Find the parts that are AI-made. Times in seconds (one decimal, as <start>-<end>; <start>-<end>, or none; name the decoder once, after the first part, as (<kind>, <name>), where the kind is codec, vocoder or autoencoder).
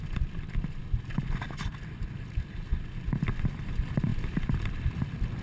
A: 4.1-4.8 (vocoder, BigVGAN v2)